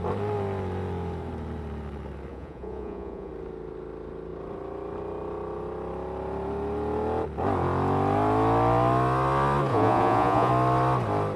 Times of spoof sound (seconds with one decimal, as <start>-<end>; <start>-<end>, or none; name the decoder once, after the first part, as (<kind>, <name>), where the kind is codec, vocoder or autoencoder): 2.3-3.3 (vocoder, Vocos); 9.7-10.5